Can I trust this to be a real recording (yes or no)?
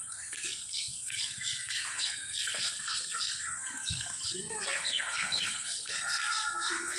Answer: no